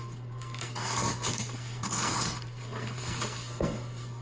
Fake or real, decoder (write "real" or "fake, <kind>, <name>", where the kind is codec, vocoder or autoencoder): fake, codec, SNAC